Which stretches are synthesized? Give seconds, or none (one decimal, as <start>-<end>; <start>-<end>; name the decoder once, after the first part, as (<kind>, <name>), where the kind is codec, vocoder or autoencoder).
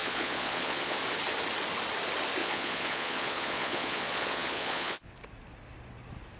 0.0-1.0 (vocoder, Vocos); 2.4-5.2